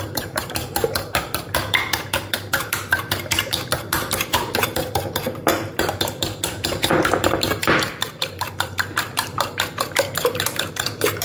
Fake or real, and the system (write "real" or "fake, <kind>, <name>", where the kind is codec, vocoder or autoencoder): fake, vocoder, BigVGAN v2